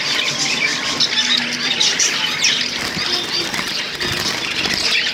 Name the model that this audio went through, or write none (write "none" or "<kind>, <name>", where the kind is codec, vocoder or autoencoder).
vocoder, BigVGAN v2